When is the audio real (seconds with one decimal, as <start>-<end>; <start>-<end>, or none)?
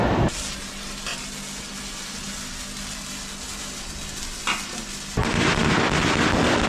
0.0-6.7